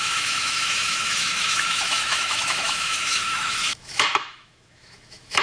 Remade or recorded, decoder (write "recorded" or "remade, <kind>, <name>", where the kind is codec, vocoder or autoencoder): remade, autoencoder, DAC-VAE